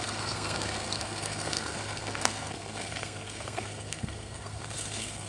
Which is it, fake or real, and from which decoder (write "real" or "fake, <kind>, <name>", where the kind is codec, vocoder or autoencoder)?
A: fake, codec, SNAC